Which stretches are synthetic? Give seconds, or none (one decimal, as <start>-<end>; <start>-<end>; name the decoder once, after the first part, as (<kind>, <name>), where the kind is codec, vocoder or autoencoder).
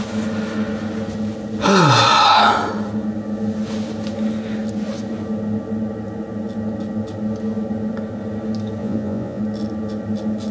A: 8.8-9.4 (vocoder, Vocos)